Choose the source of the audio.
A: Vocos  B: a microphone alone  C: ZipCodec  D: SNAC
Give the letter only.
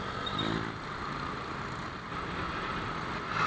B